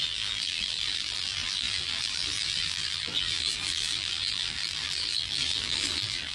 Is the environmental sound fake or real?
fake